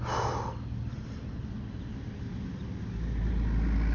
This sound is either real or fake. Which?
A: real